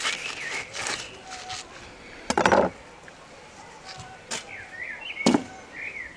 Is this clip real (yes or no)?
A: yes